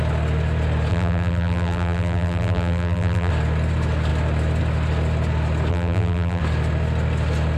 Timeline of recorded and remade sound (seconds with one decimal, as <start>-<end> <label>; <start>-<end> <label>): 0.0-0.9 recorded; 0.9-3.3 remade; 3.3-5.7 recorded; 5.7-6.4 remade; 6.4-7.6 recorded